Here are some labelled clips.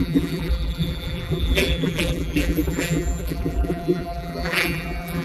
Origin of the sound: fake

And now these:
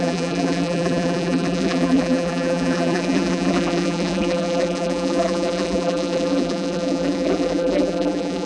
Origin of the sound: fake